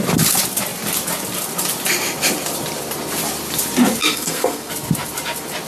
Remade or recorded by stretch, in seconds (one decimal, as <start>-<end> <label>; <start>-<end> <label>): 0.0-4.0 recorded; 4.0-4.7 remade; 4.7-5.7 recorded